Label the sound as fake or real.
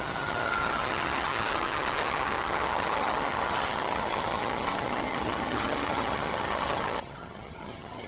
fake